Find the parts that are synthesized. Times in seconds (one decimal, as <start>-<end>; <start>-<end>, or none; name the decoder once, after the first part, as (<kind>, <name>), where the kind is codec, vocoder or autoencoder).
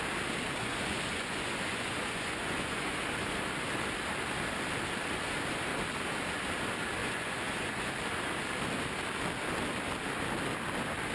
0.6-3.0 (vocoder, Vocos); 7.0-7.9